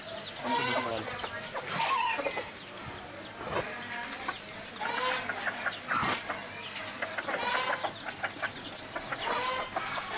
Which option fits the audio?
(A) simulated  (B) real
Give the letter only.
B